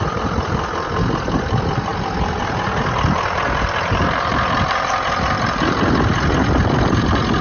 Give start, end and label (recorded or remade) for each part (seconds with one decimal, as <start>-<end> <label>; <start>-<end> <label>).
0.0-7.4 recorded